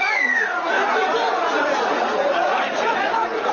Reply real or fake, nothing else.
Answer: fake